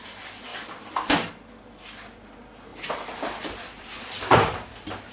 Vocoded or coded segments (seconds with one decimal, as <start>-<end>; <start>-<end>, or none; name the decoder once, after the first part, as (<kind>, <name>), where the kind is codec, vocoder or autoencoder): 2.7-5.1 (vocoder, BigVGAN v2)